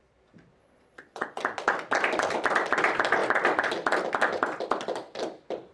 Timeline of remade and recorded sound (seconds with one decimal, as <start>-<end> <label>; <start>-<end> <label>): 0.0-0.6 recorded; 0.6-1.4 remade; 1.4-5.7 recorded